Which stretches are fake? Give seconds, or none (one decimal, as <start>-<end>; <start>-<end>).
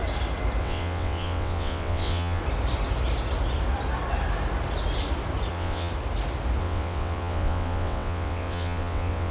0.6-2.4; 5.5-5.9; 6.6-9.3